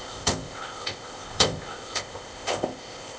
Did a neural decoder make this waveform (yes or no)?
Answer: yes